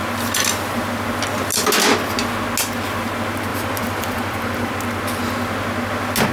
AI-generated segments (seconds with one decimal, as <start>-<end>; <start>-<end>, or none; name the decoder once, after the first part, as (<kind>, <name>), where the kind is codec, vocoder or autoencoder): 3.5-4.7 (vocoder, BigVGAN v2)